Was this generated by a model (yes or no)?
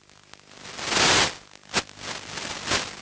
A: no